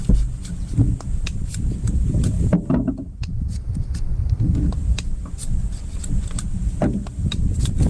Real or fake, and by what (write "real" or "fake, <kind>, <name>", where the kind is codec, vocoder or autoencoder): real